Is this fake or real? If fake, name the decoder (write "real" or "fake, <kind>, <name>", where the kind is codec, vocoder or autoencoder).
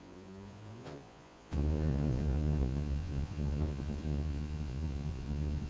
fake, vocoder, Vocos